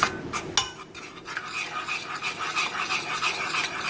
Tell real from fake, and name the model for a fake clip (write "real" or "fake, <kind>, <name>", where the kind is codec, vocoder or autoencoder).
real